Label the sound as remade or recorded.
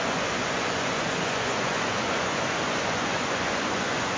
remade